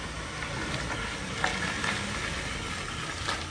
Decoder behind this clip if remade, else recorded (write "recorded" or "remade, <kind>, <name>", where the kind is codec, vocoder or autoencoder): recorded